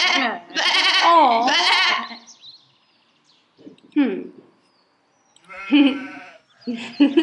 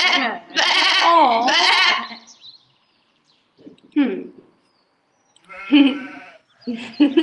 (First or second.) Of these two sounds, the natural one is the first